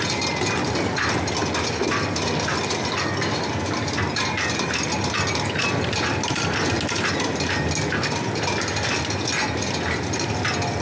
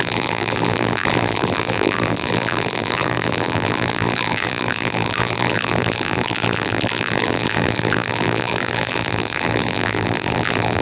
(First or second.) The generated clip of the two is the second